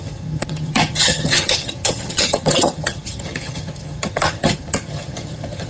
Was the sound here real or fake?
fake